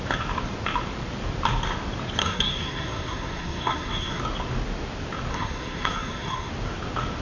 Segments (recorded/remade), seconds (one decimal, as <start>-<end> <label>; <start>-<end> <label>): 0.0-2.2 recorded; 2.2-4.2 remade; 4.2-5.3 recorded; 5.3-6.5 remade; 6.5-7.2 recorded